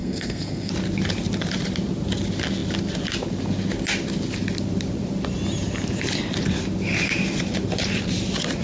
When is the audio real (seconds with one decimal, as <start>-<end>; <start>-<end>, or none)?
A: 0.7-8.6